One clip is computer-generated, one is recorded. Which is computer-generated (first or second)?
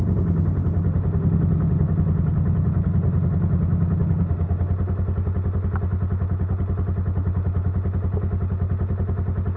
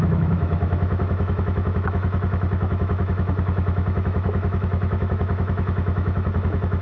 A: second